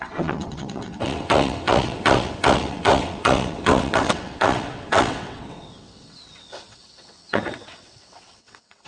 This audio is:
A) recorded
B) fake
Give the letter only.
B